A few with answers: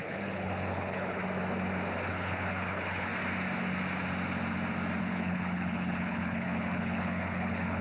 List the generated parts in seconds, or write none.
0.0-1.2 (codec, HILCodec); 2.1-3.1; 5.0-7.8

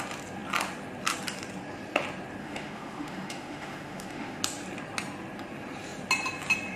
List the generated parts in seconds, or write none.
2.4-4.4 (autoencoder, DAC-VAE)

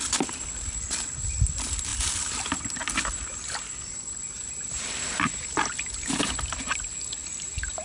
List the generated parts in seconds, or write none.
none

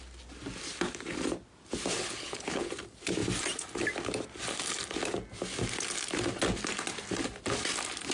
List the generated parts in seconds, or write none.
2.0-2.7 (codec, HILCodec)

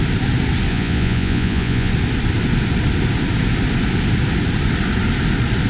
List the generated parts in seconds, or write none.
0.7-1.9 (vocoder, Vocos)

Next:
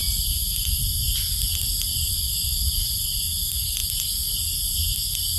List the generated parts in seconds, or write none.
none

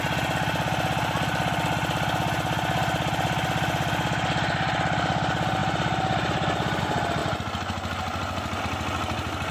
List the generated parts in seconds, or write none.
none

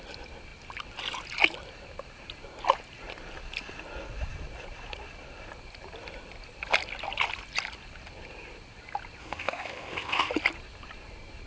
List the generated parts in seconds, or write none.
9.2-10.3 (codec, ZipCodec)